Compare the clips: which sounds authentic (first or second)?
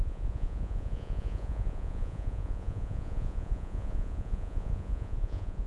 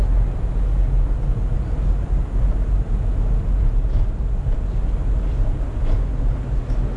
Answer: second